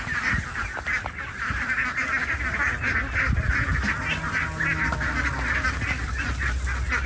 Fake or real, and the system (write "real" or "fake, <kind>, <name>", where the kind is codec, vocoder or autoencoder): real